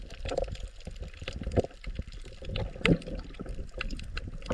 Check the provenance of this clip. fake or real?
real